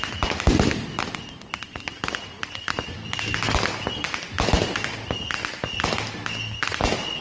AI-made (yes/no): no